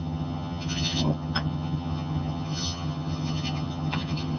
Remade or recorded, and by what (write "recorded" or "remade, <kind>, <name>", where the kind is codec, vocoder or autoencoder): remade, vocoder, HiFi-GAN